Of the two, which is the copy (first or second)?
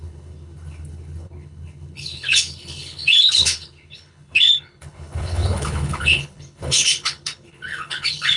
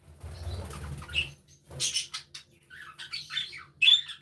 first